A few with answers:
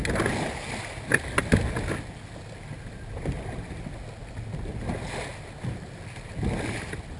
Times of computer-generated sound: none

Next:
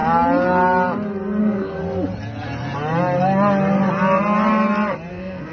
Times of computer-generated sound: 1.4-1.8; 5.1-5.5

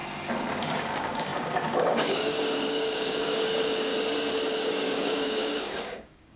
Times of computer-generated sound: 0.6-3.9; 4.7-6.4